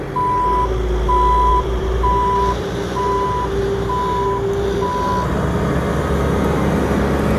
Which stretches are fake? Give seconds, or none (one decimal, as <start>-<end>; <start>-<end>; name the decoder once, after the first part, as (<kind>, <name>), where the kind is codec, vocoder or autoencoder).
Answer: 1.5-5.1 (vocoder, BigVGAN v2)